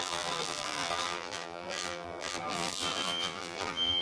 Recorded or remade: remade